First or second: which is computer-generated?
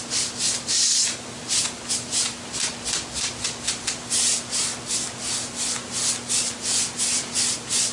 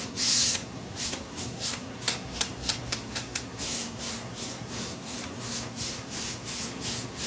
second